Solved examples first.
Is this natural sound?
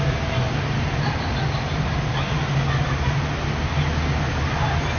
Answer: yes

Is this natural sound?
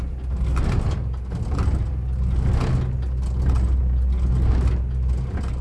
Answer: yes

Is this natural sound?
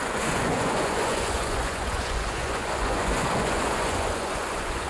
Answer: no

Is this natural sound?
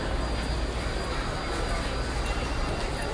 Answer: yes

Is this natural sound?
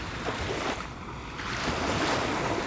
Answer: yes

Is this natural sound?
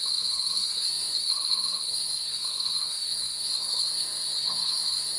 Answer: no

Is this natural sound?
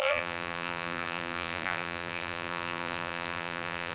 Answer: no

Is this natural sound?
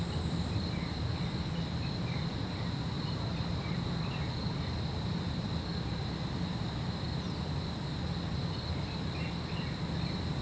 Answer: yes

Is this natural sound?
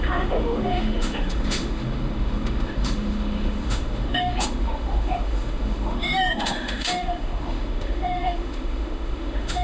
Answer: no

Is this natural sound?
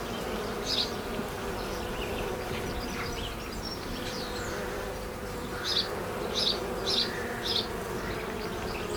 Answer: yes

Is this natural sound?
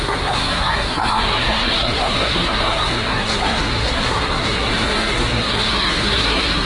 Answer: no